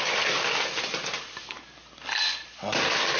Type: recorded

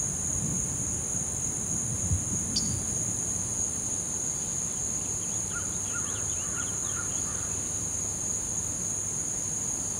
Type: recorded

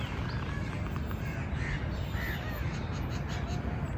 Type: recorded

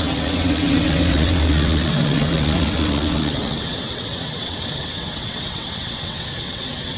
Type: remade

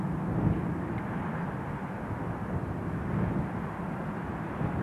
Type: recorded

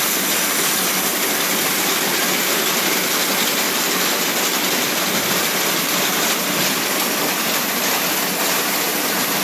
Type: recorded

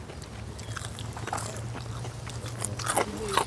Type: recorded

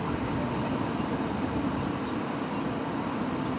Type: recorded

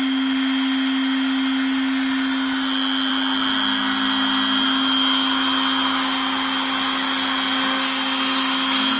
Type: recorded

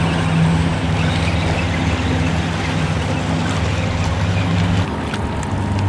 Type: recorded